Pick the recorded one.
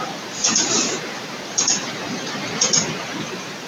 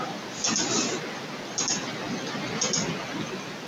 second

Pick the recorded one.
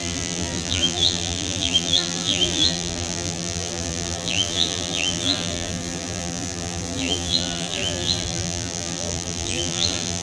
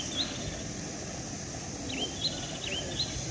second